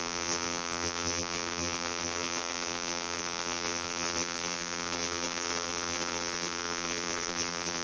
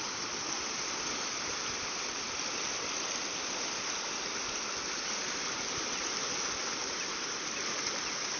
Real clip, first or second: second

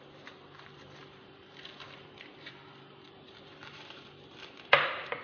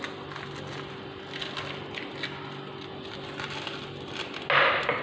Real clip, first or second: second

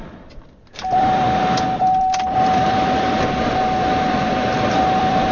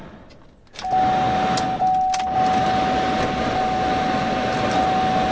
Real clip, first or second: second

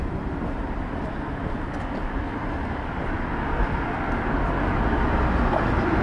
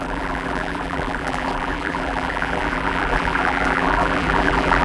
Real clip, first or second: first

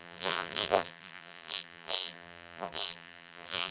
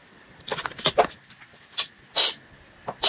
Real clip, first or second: second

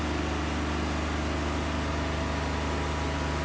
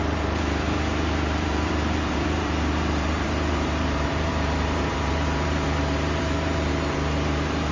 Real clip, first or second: first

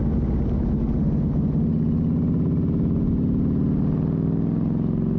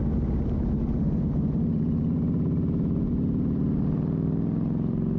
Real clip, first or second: first